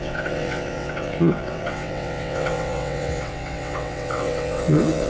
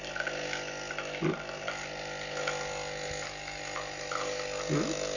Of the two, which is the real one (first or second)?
second